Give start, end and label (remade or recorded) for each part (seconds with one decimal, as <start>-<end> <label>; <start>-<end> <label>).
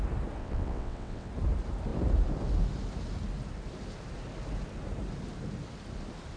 0.0-0.4 recorded; 0.4-1.3 remade; 1.3-6.4 recorded